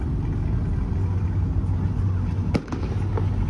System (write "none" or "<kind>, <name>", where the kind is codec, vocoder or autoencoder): none